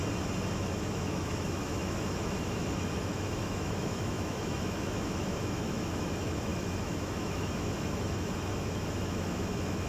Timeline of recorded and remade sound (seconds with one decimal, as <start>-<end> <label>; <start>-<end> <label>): 0.0-0.6 recorded; 0.6-9.9 remade